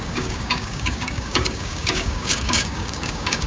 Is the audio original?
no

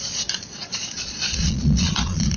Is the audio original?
no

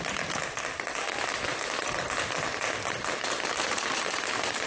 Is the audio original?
yes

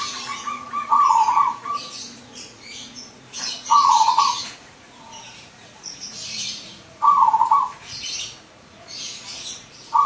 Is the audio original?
no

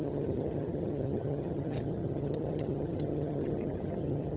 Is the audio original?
no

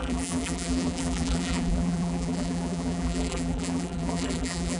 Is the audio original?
no